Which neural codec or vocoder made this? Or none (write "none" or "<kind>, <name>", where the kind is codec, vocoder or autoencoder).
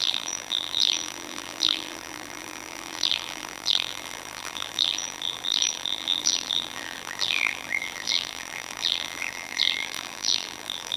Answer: vocoder, BigVGAN v2